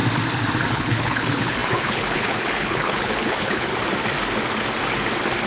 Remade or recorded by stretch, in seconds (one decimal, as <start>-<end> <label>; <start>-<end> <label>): 0.0-0.7 recorded; 0.7-3.7 remade; 3.7-5.5 recorded